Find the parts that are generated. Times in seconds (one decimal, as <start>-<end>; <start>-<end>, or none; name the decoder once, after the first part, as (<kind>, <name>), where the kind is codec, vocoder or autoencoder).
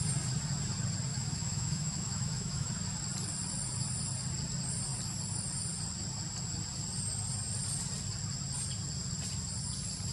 1.1-2.7 (autoencoder, DAC-VAE)